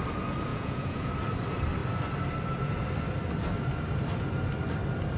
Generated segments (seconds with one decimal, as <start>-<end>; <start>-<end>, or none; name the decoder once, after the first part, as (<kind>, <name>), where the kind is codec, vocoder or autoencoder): 0.5-1.1 (vocoder, Vocos)